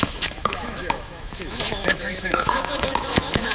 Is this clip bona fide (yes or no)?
no